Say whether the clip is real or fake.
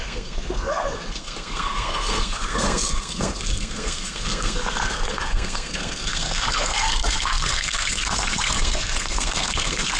fake